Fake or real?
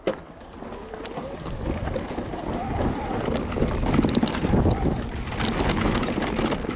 real